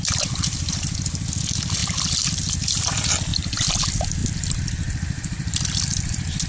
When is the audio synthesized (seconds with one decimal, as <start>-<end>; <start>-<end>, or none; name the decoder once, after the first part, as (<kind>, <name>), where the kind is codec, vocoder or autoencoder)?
1.8-2.3 (vocoder, BigVGAN v2); 3.3-3.8; 4.2-6.5

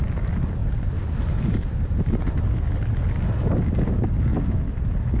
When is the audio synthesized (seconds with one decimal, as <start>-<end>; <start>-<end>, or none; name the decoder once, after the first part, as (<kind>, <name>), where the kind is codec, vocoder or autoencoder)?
0.6-2.4 (vocoder, BigVGAN v2); 4.3-5.2